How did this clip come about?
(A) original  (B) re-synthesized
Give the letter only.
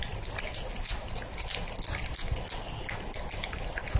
A